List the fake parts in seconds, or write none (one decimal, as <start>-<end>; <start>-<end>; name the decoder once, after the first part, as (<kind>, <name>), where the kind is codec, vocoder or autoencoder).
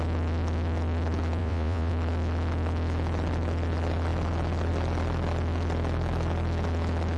1.4-1.9 (vocoder, Vocos)